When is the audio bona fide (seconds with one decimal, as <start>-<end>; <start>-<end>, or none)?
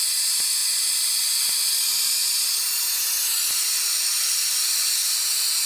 0.0-5.7